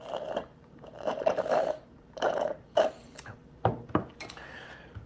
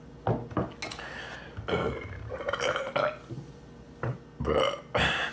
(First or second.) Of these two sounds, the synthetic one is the first